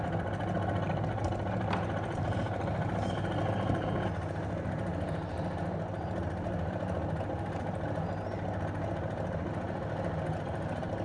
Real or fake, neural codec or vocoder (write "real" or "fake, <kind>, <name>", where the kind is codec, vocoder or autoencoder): real